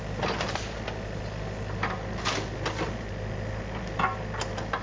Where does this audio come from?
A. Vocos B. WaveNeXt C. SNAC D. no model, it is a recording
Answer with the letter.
D